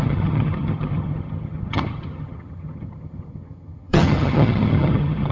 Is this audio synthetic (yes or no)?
yes